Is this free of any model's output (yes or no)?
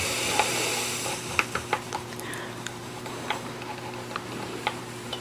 no